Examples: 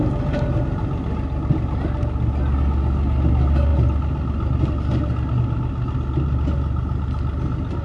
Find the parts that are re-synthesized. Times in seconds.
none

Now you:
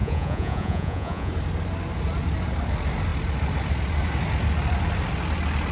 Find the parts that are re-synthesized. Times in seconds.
0.0-1.3

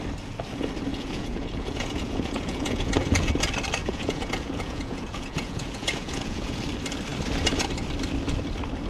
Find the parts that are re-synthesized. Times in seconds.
0.9-3.3; 3.8-6.6

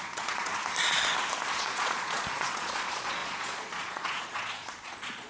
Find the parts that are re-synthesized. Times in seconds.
0.0-0.6; 1.5-5.3

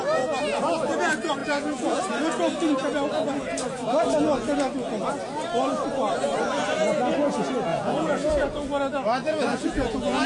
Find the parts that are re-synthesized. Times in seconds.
1.4-2.0; 7.7-8.3; 9.2-10.3

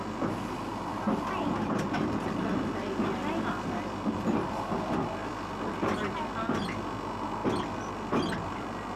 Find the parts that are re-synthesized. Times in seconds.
none

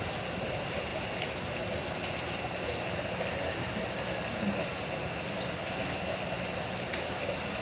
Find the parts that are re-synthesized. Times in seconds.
none

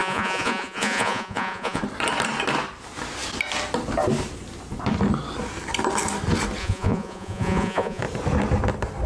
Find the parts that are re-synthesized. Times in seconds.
0.0-1.8; 6.6-8.0